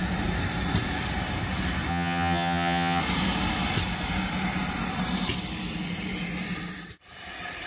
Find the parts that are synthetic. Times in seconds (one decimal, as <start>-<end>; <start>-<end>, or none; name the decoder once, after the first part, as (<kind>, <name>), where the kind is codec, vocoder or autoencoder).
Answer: 1.9-3.0 (vocoder, HiFi-GAN)